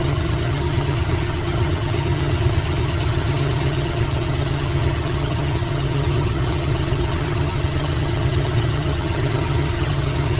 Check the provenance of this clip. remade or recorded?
remade